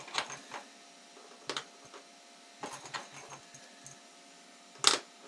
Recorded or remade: recorded